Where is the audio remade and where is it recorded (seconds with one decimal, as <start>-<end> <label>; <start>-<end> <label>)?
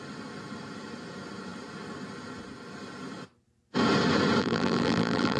0.0-4.4 recorded; 4.4-5.4 remade